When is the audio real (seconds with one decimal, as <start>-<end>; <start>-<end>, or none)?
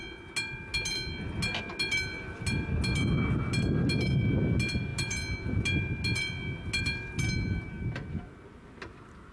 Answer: 0.0-9.3